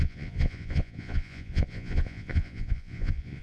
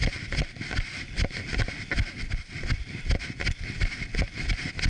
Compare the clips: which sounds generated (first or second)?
first